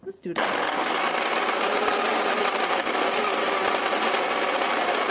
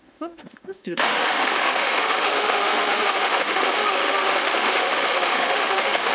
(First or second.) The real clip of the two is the first